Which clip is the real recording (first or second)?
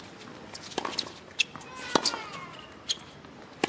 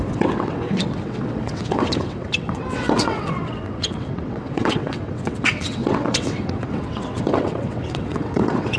first